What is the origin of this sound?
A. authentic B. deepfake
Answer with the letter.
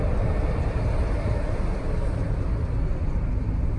A